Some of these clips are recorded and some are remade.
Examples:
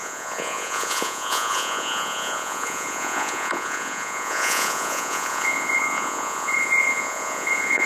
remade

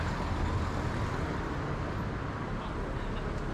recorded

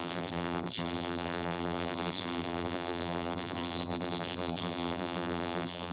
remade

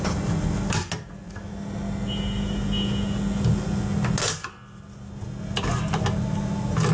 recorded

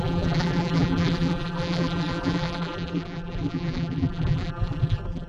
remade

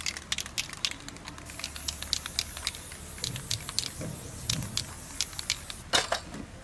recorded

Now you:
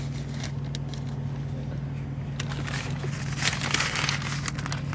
recorded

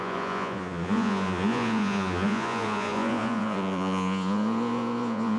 remade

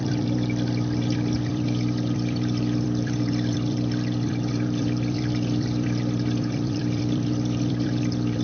remade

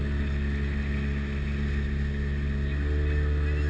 recorded